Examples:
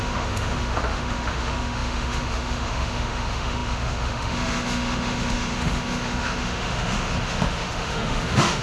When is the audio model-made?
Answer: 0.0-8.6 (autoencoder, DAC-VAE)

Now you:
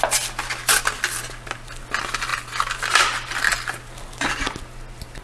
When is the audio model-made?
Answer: none

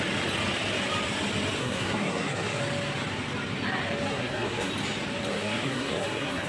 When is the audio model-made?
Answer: 1.6-2.6 (codec, SNAC); 4.1-4.7; 5.3-6.5

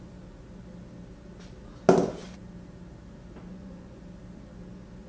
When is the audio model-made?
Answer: 3.5-4.0 (vocoder, Vocos)

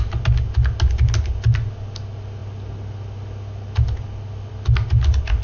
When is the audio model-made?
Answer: none